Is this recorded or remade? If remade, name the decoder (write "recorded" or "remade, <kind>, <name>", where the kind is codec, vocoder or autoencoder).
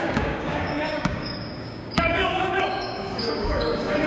remade, codec, DAC